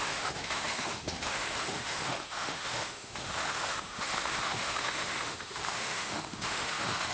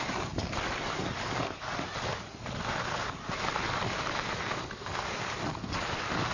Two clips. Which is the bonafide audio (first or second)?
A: second